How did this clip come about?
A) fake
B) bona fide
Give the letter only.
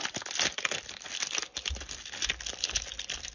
B